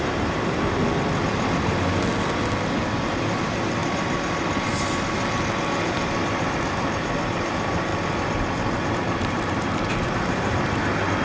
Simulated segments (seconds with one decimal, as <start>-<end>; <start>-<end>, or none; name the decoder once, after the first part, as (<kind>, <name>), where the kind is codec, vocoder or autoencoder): 0.0-0.8 (vocoder, BigVGAN v2); 3.4-3.8; 6.4-7.9; 8.9-11.2